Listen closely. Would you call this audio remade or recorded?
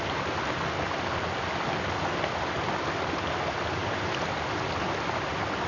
recorded